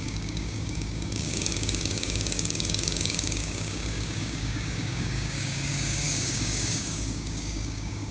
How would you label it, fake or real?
fake